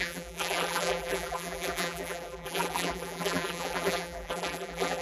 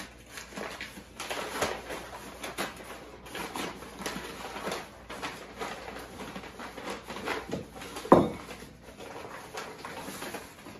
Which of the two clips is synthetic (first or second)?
first